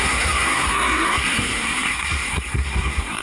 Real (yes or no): no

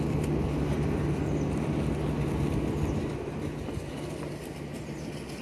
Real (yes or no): yes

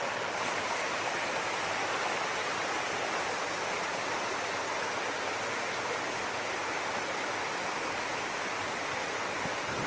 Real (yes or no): yes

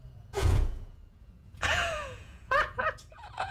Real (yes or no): no